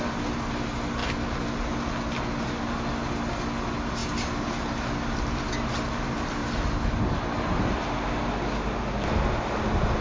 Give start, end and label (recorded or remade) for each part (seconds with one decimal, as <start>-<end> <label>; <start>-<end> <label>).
0.0-10.0 recorded